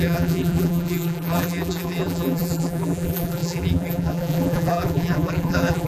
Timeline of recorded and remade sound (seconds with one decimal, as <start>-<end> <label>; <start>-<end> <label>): 0.0-5.9 remade